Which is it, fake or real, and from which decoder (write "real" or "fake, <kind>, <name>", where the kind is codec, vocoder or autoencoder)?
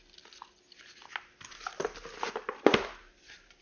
real